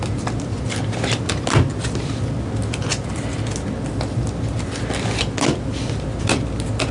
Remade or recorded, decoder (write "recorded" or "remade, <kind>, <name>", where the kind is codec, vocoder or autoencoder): recorded